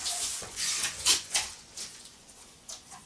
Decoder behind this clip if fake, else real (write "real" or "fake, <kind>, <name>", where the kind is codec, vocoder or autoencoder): fake, vocoder, Vocos